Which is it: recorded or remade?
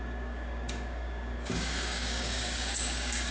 remade